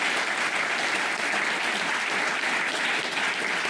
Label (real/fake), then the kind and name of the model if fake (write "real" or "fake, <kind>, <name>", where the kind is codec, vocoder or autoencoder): real